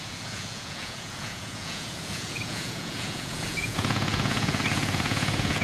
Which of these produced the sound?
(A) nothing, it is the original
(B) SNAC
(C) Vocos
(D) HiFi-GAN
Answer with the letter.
C